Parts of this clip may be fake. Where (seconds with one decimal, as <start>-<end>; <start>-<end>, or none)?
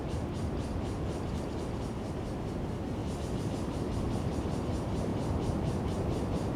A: 3.0-4.4; 5.1-6.6